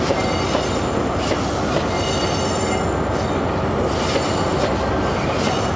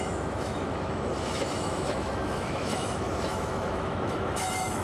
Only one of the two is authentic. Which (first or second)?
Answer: first